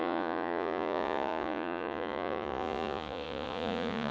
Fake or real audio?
fake